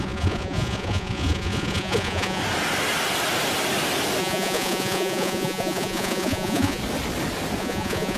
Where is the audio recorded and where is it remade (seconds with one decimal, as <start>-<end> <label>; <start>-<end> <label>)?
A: 0.0-2.4 remade; 2.4-4.2 recorded; 4.2-6.8 remade; 6.8-7.6 recorded; 7.6-8.2 remade